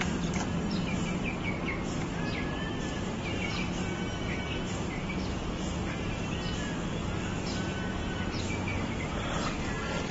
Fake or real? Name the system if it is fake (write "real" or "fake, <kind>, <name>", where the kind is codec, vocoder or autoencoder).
real